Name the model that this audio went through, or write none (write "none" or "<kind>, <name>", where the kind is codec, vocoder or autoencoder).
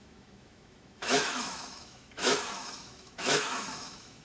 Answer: autoencoder, DAC-VAE